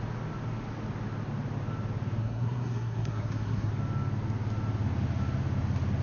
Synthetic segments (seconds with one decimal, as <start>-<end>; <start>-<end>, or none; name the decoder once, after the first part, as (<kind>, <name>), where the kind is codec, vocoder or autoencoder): 2.2-3.7 (codec, SNAC)